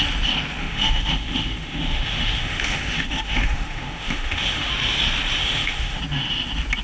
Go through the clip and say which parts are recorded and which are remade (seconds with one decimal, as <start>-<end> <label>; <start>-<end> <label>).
0.0-0.6 recorded; 0.6-4.7 remade; 4.7-5.4 recorded; 5.4-6.0 remade; 6.0-6.8 recorded